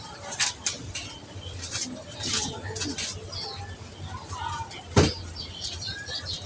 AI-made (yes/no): no